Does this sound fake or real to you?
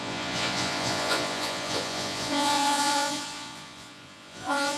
fake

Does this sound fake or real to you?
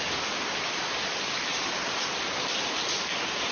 real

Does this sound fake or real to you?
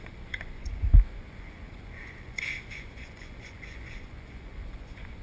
fake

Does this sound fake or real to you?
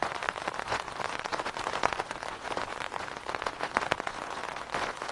fake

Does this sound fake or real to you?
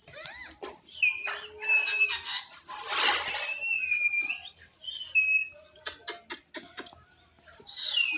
real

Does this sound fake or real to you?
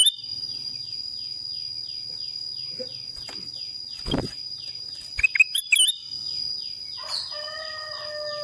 real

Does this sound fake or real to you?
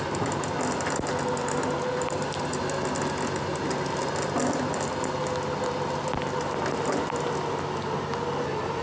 real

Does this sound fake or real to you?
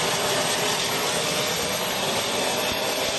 real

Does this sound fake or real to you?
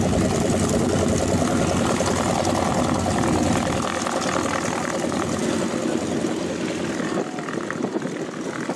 real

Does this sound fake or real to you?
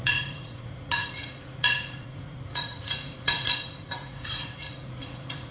fake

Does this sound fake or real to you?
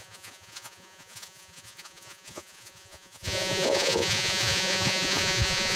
fake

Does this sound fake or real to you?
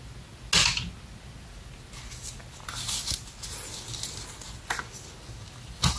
real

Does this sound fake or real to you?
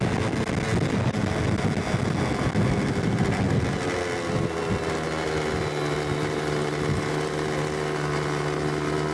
real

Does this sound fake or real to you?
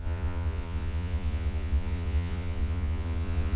fake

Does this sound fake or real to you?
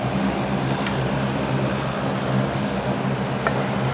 real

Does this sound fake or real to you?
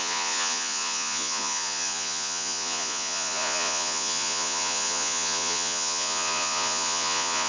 fake